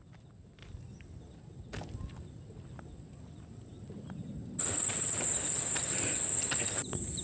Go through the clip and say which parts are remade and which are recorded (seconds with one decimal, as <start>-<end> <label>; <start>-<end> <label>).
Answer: 0.0-7.2 recorded